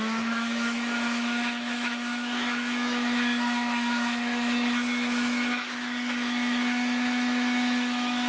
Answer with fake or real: fake